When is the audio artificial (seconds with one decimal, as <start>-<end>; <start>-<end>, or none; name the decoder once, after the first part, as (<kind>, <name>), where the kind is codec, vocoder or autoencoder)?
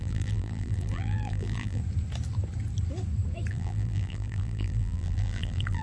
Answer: 0.0-1.8 (vocoder, BigVGAN v2); 3.5-5.8